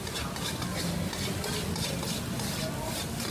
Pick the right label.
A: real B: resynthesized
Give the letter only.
A